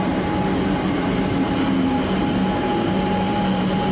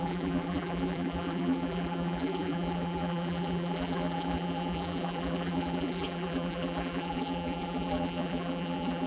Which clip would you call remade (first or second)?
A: second